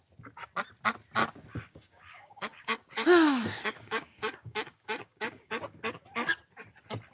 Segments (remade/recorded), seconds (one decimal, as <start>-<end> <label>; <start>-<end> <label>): 0.0-1.2 recorded; 1.2-5.5 remade; 5.5-7.1 recorded

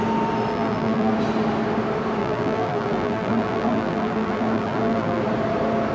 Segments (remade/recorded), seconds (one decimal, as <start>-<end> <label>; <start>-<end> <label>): 0.0-0.5 recorded; 0.5-1.1 remade; 1.1-2.2 recorded; 2.2-5.2 remade; 5.2-5.9 recorded